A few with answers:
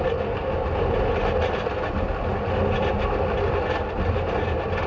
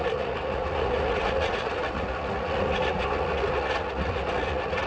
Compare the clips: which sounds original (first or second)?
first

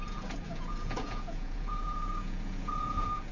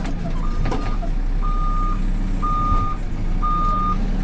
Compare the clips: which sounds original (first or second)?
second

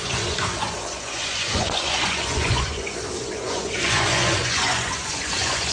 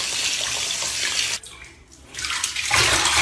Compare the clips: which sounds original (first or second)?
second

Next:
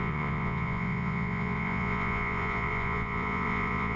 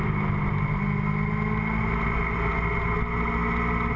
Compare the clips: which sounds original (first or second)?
second